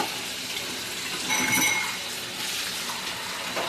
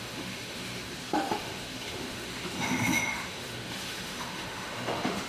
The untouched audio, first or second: first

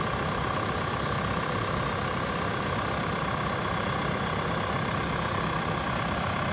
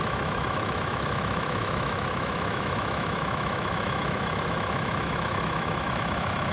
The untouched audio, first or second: first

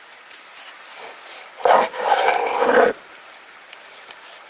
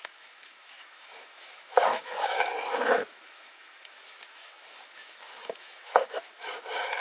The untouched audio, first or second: first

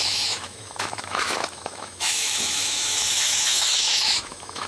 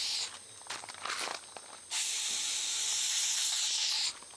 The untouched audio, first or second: second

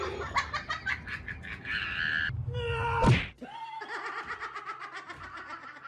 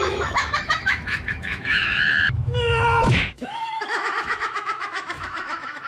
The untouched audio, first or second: first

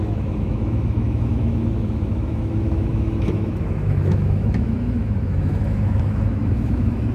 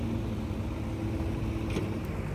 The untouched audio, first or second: second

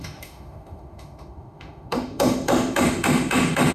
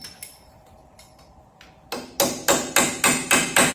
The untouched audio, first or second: second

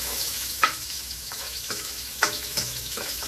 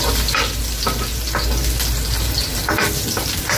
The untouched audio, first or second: second